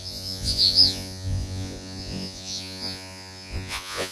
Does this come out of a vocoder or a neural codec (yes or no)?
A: yes